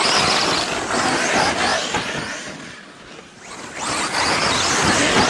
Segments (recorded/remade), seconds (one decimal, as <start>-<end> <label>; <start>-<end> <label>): 0.0-5.3 recorded